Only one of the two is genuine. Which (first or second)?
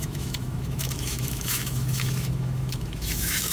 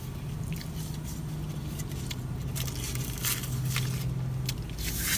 second